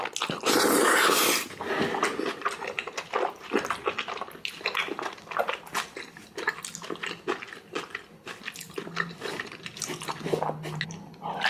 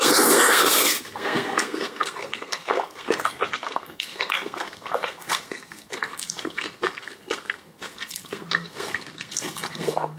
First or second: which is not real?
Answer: second